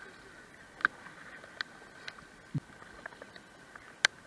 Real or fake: real